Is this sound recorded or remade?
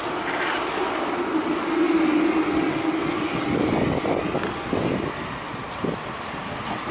recorded